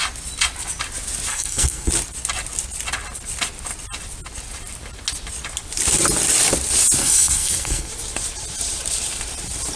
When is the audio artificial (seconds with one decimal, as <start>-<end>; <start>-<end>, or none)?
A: 1.3-1.9; 7.0-7.9